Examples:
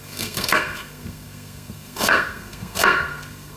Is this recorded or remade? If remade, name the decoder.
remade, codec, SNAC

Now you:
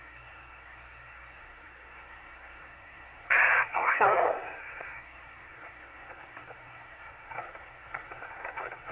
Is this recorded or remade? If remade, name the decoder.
remade, codec, SNAC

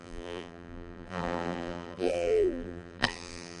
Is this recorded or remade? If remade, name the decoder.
remade, vocoder, BigVGAN v2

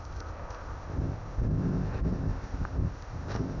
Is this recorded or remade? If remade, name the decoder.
remade, codec, ZipCodec